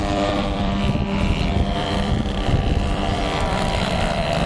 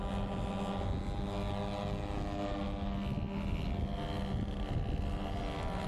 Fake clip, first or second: first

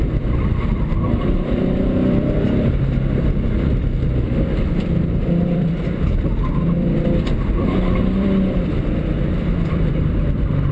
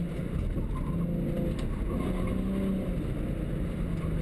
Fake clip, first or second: first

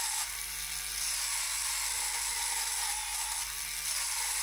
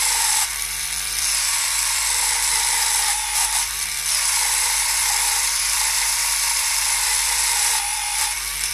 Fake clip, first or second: second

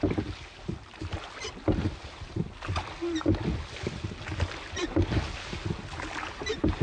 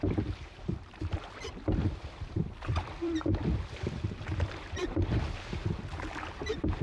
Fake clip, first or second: second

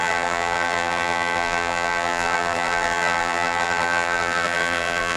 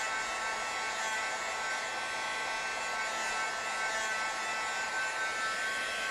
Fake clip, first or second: first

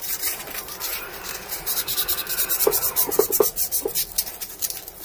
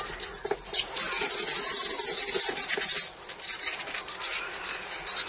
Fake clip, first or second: first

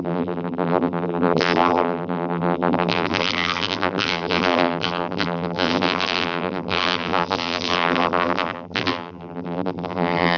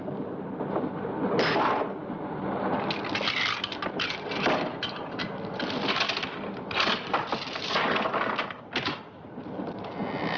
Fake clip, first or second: first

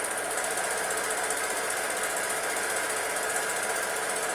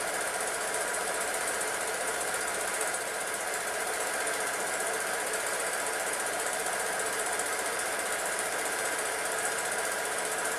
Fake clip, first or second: second